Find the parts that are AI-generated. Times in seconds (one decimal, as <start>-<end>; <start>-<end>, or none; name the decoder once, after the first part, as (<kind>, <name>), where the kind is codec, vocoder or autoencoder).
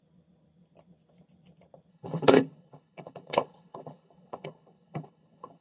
1.9-5.6 (codec, HILCodec)